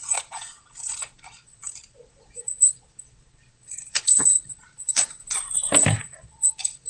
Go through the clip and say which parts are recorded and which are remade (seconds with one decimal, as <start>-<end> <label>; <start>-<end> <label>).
0.0-5.2 remade; 5.2-6.0 recorded; 6.0-6.9 remade